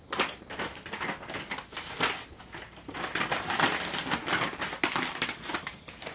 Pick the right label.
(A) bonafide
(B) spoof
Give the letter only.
A